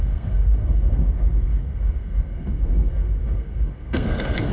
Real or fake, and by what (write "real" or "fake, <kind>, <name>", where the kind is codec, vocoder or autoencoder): fake, codec, SNAC